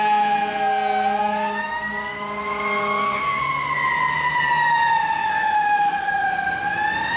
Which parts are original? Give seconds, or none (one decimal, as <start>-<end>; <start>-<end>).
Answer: 0.0-1.2; 3.4-5.2; 6.3-7.2